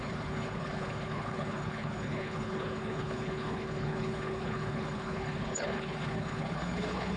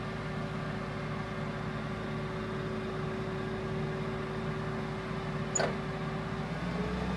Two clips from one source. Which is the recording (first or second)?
second